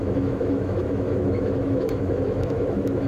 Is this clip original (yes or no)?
no